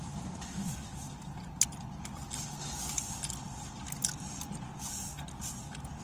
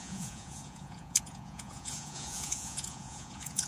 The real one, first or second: first